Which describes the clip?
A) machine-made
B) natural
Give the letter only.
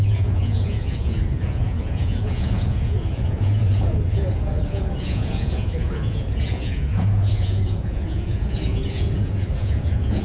A